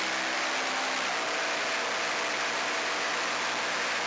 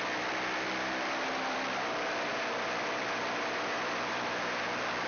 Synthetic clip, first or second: second